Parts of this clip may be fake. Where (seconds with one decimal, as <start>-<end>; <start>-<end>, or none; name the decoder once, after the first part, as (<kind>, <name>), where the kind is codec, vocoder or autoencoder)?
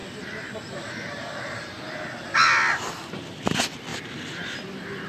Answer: 0.0-1.7 (vocoder, BigVGAN v2); 3.9-5.1